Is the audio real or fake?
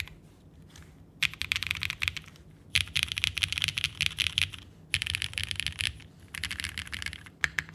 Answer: real